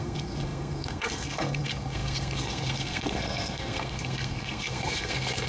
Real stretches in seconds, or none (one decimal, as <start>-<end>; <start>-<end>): none